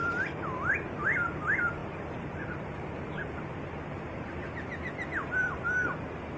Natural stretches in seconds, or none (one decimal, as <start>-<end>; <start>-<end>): 0.9-1.8; 5.6-6.4